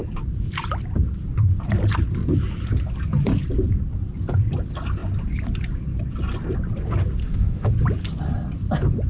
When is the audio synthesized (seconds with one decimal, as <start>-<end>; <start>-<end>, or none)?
7.2-7.7